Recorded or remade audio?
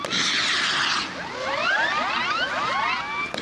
recorded